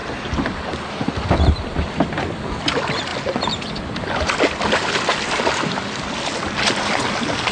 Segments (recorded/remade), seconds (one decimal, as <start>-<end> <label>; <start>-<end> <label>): 0.0-7.5 recorded